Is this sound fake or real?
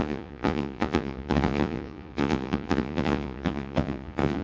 fake